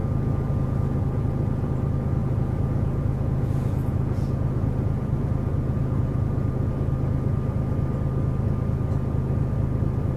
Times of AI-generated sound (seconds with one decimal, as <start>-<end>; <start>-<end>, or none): 0.0-1.7; 2.2-6.7